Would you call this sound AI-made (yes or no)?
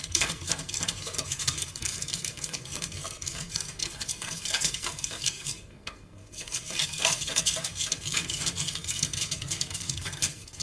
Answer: yes